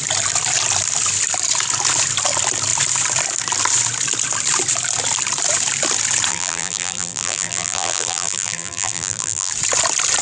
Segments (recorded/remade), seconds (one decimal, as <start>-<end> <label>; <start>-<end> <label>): 0.0-6.3 recorded; 6.3-9.5 remade; 9.5-10.2 recorded